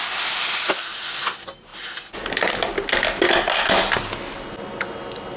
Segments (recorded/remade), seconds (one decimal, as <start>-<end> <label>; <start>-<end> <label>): 0.0-5.4 recorded